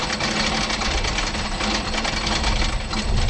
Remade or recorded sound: recorded